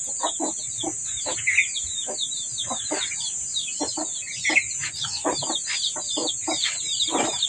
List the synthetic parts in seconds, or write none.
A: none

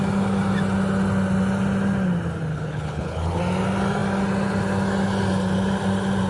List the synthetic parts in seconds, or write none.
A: 2.5-3.4 (codec, HILCodec)

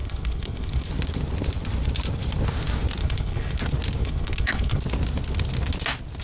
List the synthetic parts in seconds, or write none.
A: 0.0-0.9 (codec, HILCodec); 3.0-3.6; 4.0-4.8

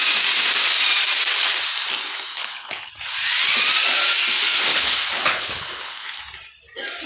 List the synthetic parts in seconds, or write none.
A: 2.3-2.9 (codec, HILCodec); 4.7-6.2

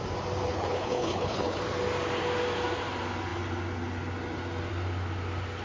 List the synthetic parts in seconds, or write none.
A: 0.5-1.6 (codec, HILCodec)

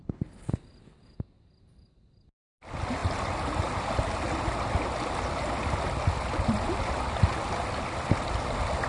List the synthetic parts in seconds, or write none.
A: 0.0-0.5 (codec, HILCodec)